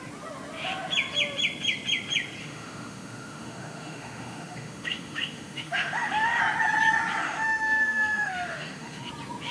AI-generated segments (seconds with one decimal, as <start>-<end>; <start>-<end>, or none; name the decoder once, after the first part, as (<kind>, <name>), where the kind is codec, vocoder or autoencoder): 2.4-6.4 (autoencoder, DAC-VAE); 7.2-9.1